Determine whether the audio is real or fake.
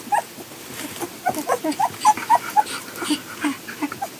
real